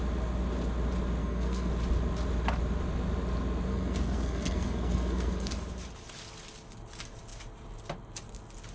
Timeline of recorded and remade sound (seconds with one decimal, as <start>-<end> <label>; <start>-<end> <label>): 0.0-1.2 recorded; 1.2-1.7 remade; 1.7-3.7 recorded; 3.7-5.5 remade; 5.5-8.7 recorded